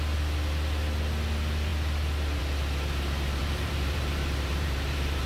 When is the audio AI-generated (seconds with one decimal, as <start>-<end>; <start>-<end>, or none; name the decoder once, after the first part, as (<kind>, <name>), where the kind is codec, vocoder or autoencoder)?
3.4-5.3 (vocoder, BigVGAN v2)